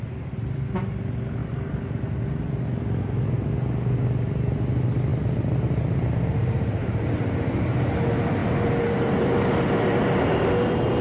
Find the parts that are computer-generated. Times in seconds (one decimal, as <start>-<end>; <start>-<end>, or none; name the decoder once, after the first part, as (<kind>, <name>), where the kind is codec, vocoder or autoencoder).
1.4-3.0 (vocoder, BigVGAN v2); 5.1-7.0; 8.4-11.0